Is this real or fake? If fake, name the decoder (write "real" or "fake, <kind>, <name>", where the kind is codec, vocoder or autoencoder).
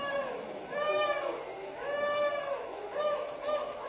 fake, autoencoder, DAC-VAE